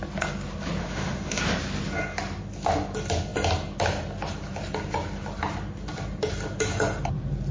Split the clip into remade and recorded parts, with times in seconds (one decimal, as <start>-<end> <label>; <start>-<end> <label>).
0.0-0.8 recorded; 0.8-1.4 remade; 1.4-7.5 recorded